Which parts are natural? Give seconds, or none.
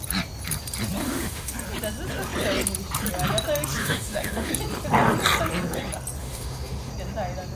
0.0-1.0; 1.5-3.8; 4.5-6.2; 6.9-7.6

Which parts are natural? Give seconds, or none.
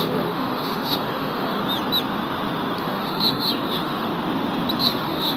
1.6-2.8; 4.1-4.8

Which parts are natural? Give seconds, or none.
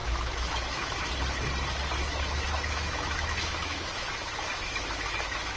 1.1-2.0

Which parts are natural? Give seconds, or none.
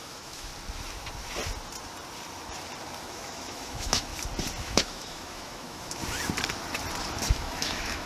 0.5-3.0; 4.1-4.6; 6.0-7.3